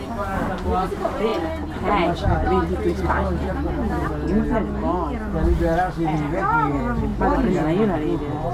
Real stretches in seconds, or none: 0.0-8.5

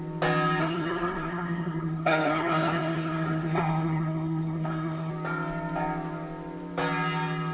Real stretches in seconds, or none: 0.0-0.6; 5.1-7.5

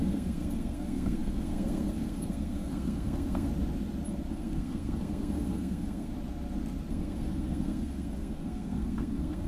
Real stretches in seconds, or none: 3.5-4.3; 6.1-6.9

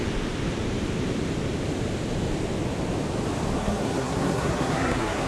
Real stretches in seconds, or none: 0.0-3.6

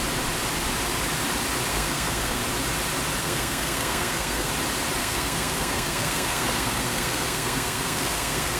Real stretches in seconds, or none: 0.0-1.7; 2.4-3.2; 4.5-5.0

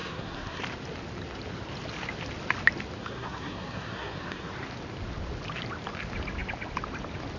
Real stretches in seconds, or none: 0.6-3.0; 4.5-7.4

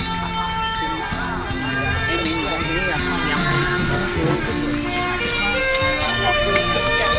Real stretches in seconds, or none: 0.0-3.4; 4.4-5.6; 6.4-7.2